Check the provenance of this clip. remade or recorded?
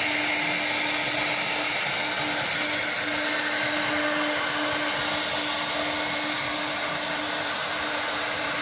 recorded